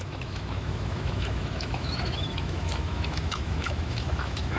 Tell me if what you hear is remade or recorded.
remade